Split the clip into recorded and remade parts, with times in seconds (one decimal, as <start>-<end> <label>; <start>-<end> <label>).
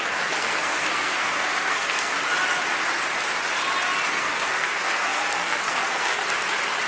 0.0-2.1 remade; 2.1-4.1 recorded; 4.1-6.2 remade; 6.2-6.9 recorded